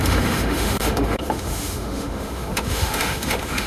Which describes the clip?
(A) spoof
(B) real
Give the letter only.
A